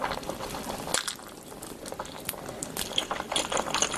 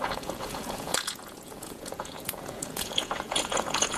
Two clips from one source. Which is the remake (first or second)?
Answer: second